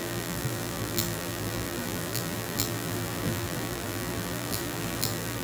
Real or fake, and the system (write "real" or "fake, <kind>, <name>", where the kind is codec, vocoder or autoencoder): fake, vocoder, BigVGAN v2